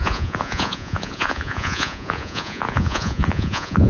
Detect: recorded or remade remade